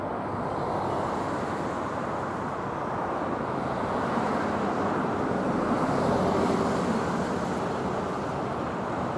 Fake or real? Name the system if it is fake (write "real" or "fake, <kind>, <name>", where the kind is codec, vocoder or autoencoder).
real